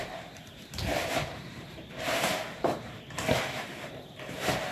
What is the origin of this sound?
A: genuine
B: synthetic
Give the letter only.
B